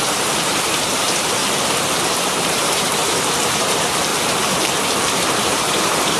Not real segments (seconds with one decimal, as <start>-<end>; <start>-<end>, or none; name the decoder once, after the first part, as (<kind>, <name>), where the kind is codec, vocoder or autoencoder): 0.0-1.4 (vocoder, BigVGAN v2); 2.0-4.1; 5.1-6.2